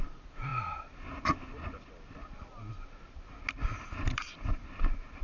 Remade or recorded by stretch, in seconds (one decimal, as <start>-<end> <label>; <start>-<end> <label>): 0.0-5.2 recorded

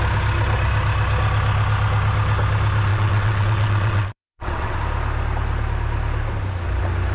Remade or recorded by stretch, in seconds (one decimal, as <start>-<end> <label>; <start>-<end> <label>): 0.0-2.9 recorded; 2.9-4.8 remade; 4.8-7.1 recorded

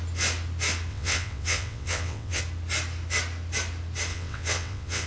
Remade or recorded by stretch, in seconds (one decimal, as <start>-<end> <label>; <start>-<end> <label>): 0.0-0.9 recorded; 0.9-2.4 remade; 2.4-4.1 recorded; 4.1-5.1 remade

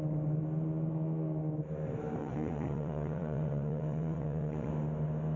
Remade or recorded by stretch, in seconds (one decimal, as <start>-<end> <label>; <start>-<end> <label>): 0.0-2.2 recorded; 2.2-4.7 remade; 4.7-5.4 recorded